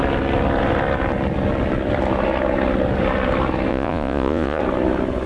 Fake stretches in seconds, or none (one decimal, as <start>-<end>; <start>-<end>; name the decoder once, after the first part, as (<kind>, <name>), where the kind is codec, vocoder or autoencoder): 3.7-4.6 (vocoder, Vocos)